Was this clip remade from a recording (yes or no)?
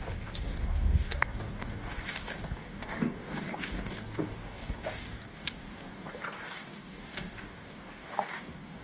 yes